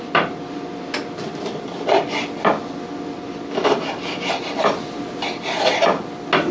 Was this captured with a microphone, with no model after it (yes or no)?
yes